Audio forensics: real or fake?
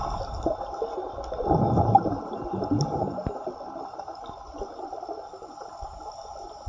real